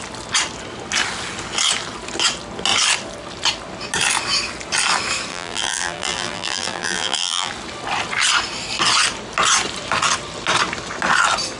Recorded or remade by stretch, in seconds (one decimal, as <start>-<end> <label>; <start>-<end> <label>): 0.0-5.3 recorded; 5.3-7.5 remade; 7.5-11.6 recorded